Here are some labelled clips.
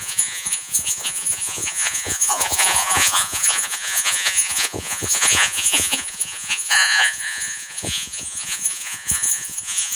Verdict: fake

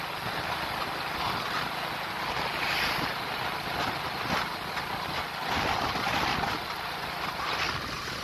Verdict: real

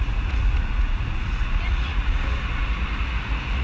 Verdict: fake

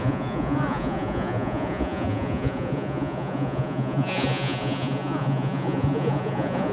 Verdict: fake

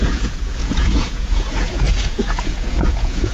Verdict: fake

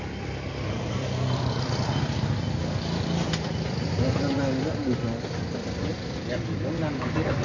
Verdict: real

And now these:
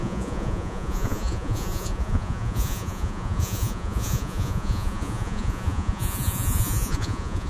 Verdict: fake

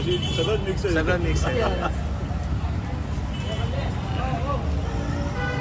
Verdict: real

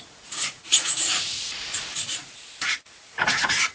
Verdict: fake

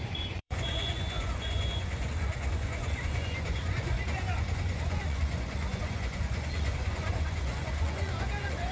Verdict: fake